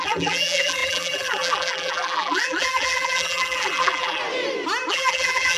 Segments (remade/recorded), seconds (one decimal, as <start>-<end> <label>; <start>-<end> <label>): 0.0-4.2 remade; 4.2-4.9 recorded; 4.9-5.6 remade